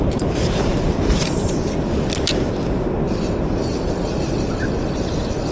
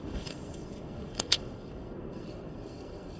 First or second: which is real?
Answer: first